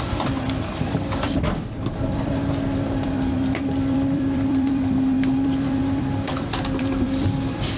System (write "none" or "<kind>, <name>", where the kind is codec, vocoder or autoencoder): vocoder, BigVGAN v2